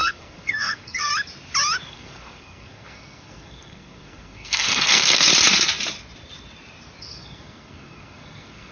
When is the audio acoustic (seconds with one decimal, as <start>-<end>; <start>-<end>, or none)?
1.1-1.9; 5.3-7.0